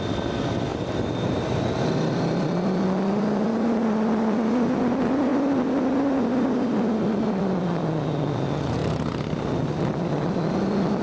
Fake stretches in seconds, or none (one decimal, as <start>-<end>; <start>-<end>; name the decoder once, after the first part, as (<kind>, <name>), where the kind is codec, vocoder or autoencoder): none